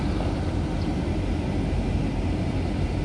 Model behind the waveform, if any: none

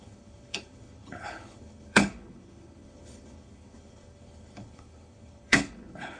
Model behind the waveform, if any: codec, HILCodec